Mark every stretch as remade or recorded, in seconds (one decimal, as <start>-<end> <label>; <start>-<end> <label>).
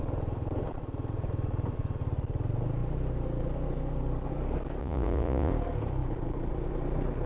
0.0-4.8 recorded; 4.8-5.5 remade; 5.5-7.3 recorded